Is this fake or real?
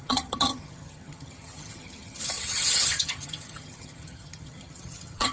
fake